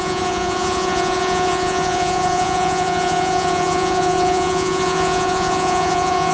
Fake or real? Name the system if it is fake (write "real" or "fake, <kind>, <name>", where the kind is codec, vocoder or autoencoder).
fake, vocoder, Vocos